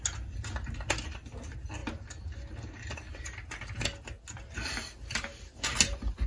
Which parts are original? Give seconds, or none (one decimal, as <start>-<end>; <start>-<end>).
0.0-6.3